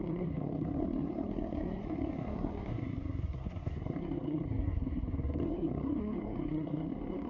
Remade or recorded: remade